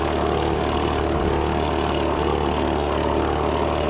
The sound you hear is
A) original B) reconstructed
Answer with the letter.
A